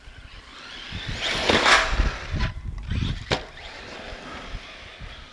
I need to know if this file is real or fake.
real